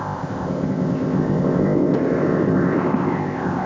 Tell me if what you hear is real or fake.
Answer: fake